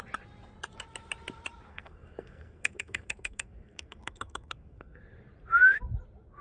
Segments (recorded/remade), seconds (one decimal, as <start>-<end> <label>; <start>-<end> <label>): 0.0-1.7 recorded; 1.7-5.0 remade; 5.0-6.4 recorded